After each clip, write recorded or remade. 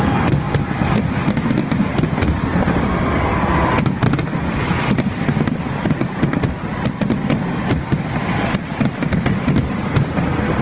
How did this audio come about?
recorded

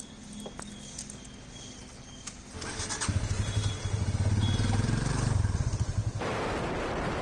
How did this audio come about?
recorded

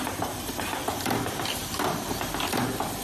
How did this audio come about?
remade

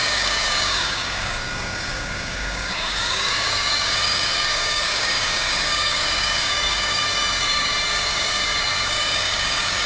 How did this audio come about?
remade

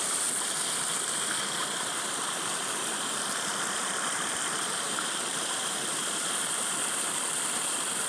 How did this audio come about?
recorded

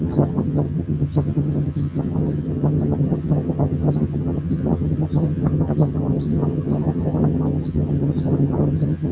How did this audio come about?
remade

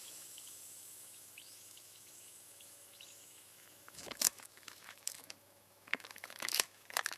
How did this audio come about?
remade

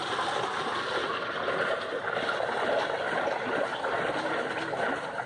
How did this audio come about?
recorded